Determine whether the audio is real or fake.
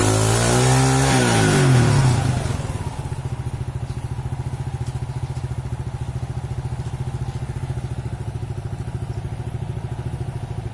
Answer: real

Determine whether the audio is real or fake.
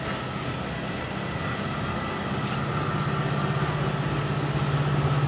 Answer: real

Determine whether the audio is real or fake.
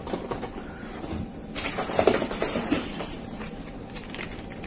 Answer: fake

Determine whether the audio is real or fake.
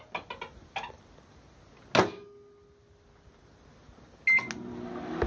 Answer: real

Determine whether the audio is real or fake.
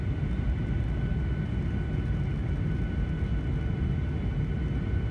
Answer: real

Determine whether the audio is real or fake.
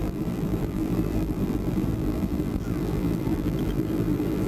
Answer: fake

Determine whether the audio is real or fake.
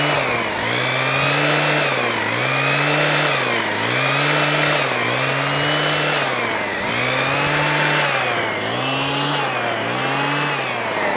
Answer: real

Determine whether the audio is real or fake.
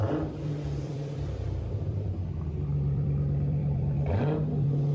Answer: fake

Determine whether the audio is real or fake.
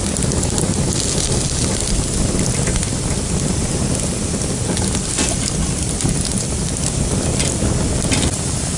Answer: real